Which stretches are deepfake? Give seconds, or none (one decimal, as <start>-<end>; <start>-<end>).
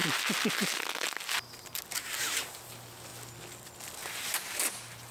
none